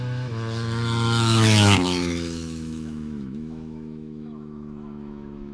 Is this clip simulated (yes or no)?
yes